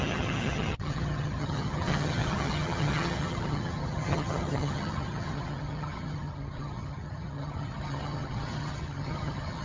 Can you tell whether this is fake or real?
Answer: fake